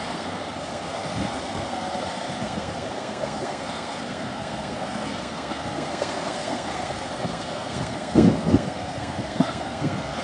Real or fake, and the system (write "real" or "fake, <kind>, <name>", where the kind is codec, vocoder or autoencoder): fake, codec, SNAC